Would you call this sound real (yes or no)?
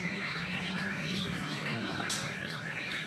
no